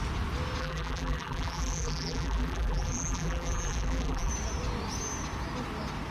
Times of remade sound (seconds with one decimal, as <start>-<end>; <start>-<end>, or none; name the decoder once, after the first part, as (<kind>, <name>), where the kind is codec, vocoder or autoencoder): 0.6-4.3 (vocoder, BigVGAN v2)